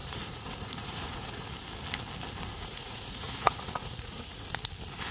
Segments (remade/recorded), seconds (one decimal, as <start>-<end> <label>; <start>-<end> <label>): 0.0-1.5 remade; 1.5-2.5 recorded; 2.5-4.5 remade; 4.5-5.1 recorded